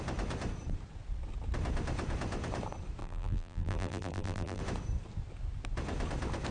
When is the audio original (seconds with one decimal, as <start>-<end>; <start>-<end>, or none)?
0.0-3.0; 4.6-6.5

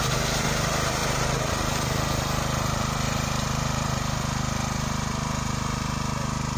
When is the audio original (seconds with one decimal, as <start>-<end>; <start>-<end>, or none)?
0.0-1.0; 4.0-6.6